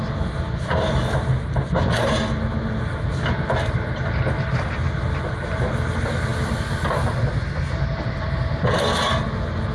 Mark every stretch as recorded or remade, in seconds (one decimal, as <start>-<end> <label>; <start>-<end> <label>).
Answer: 0.0-9.7 recorded